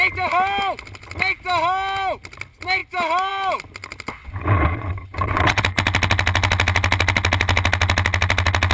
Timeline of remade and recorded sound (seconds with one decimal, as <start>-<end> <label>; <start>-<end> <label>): 0.0-4.2 recorded; 4.2-5.6 remade; 5.6-8.7 recorded